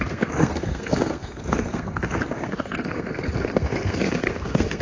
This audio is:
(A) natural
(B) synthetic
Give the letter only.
B